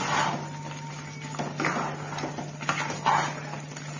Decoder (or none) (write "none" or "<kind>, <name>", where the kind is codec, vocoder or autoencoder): none